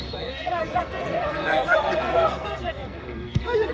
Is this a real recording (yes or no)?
no